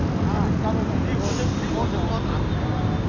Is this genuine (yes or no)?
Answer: yes